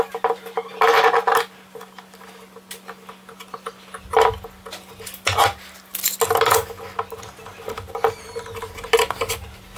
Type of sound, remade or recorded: recorded